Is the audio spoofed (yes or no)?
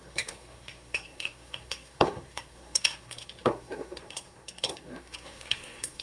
yes